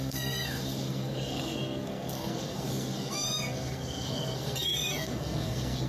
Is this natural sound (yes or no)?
no